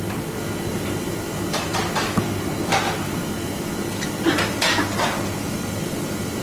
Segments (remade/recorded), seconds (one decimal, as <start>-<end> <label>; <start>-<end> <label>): 0.0-6.4 recorded